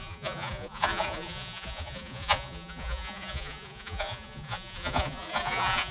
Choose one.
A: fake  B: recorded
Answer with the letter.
A